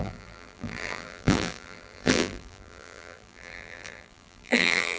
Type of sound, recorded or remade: remade